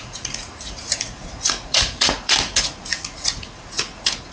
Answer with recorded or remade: remade